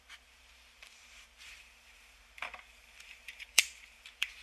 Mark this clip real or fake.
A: fake